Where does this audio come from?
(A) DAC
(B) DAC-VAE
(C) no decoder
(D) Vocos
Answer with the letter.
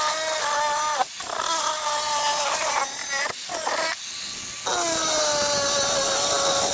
C